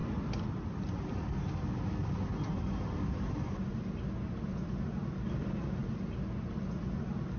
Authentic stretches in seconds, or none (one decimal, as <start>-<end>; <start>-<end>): 0.0-7.4